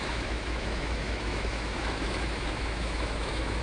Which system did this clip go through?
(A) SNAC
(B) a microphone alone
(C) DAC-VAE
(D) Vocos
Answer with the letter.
C